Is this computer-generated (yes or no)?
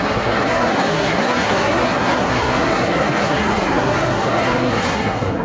yes